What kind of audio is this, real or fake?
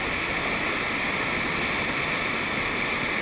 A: real